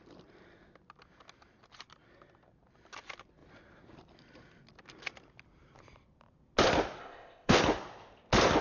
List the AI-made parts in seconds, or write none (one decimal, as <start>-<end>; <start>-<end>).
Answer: 7.0-7.6